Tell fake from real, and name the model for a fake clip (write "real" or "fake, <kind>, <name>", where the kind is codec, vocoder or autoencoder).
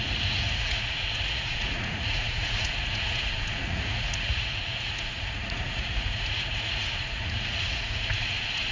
fake, vocoder, Vocos